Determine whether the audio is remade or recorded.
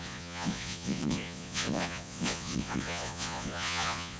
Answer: remade